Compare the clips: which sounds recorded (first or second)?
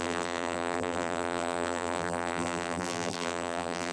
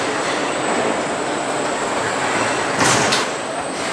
second